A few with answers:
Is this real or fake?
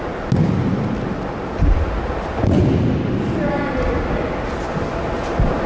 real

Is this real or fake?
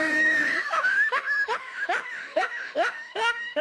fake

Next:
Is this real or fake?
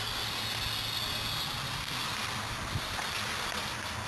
real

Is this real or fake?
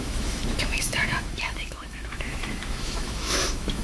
fake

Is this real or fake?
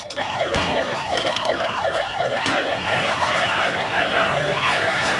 fake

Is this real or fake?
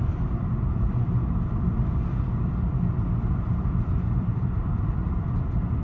fake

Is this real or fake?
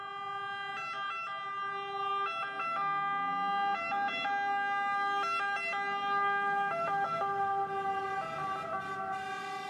real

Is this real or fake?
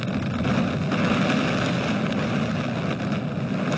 real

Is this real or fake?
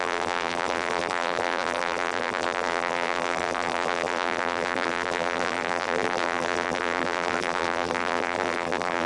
fake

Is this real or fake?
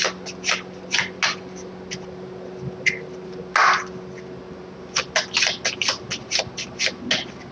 real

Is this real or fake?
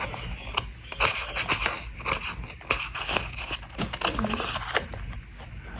real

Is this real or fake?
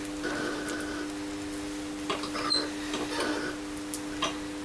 real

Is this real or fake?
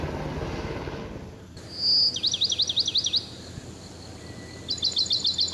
real